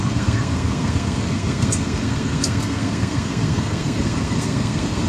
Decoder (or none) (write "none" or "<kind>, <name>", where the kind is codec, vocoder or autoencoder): codec, SNAC